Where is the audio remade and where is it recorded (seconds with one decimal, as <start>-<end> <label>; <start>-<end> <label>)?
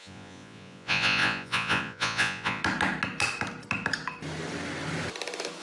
0.0-2.6 remade; 2.6-5.6 recorded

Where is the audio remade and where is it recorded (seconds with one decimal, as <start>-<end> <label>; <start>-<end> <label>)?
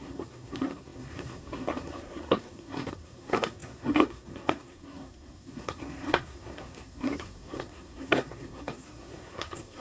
0.0-9.8 remade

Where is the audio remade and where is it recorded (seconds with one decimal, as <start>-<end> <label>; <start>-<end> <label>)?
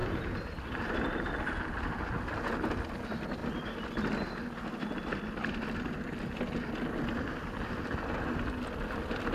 0.0-1.6 remade; 1.6-9.3 recorded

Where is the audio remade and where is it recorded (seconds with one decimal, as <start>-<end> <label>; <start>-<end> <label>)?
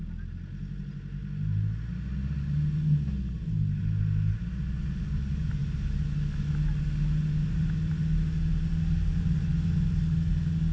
0.0-10.7 recorded